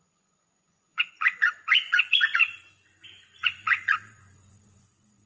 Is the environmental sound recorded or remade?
remade